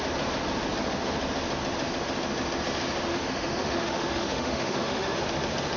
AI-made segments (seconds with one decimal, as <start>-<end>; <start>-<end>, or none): 3.1-5.2